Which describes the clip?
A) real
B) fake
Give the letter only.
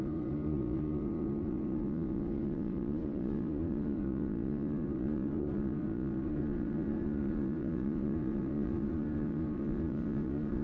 B